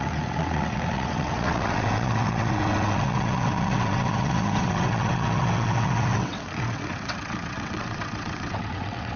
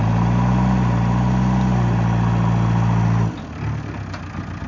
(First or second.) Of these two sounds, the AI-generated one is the first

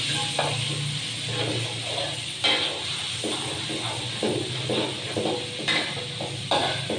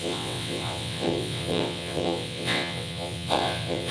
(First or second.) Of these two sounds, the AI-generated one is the second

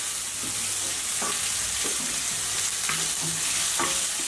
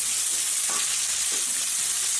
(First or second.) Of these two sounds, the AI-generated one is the second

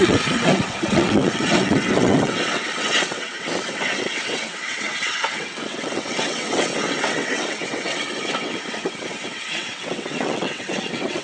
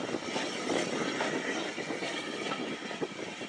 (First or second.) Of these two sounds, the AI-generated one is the first